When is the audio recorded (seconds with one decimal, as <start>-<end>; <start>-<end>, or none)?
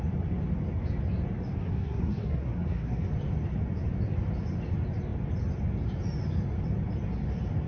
0.0-1.6; 3.1-7.7